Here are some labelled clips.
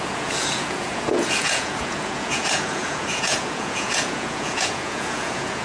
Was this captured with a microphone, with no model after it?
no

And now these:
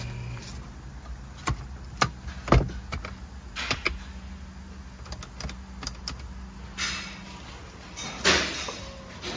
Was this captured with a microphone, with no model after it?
yes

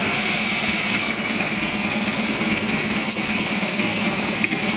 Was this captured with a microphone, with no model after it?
no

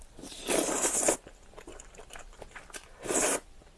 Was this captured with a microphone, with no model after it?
yes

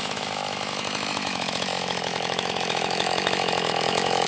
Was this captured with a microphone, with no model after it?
no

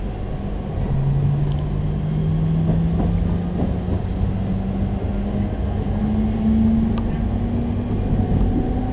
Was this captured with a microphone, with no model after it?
yes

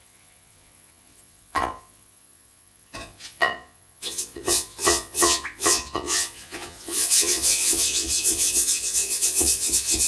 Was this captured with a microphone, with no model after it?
no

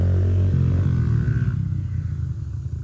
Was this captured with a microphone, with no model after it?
yes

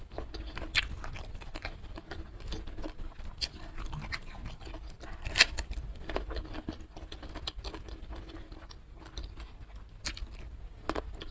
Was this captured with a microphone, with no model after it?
yes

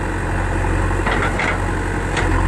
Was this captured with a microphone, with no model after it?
yes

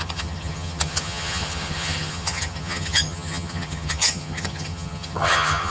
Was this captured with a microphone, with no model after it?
no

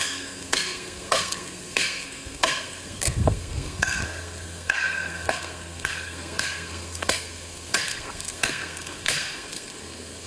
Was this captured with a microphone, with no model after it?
no